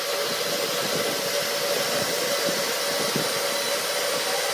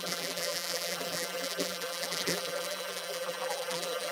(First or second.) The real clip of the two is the first